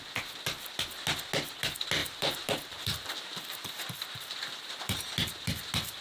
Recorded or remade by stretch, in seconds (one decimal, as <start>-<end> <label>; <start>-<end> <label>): 0.0-2.0 recorded; 2.0-5.1 remade; 5.1-6.0 recorded